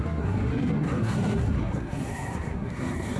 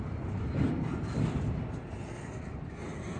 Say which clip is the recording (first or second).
second